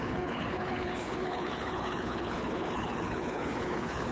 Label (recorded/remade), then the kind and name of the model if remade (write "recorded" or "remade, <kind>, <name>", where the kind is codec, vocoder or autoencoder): remade, codec, HILCodec